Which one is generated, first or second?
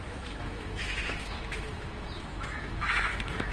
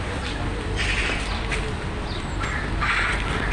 first